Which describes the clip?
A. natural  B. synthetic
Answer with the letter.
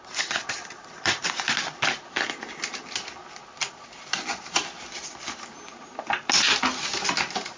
A